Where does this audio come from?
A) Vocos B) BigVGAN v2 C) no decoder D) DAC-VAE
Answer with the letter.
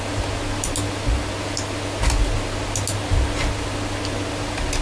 C